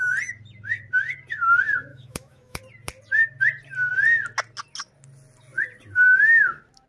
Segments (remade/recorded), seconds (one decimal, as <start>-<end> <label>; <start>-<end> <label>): 0.0-1.9 recorded; 1.9-2.6 remade; 2.6-6.9 recorded